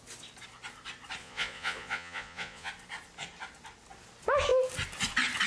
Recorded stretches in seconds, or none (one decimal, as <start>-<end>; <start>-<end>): 0.0-1.2; 2.7-5.5